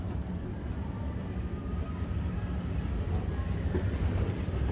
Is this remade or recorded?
recorded